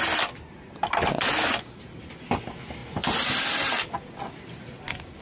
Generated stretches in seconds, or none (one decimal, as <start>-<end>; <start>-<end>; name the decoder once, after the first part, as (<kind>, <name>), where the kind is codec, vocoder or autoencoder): none